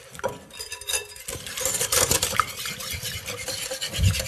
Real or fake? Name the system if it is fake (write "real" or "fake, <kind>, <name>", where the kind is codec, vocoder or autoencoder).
real